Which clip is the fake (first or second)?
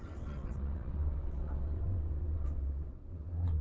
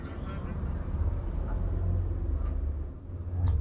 first